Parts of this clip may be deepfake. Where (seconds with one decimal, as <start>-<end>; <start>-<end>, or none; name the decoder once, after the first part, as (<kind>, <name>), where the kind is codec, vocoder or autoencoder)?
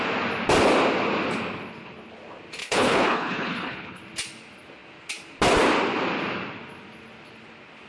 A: 2.6-4.0 (codec, HILCodec)